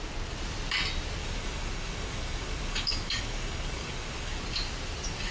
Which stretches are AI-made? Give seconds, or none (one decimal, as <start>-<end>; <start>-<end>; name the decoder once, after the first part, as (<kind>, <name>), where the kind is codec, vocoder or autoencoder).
1.2-4.4 (codec, DAC)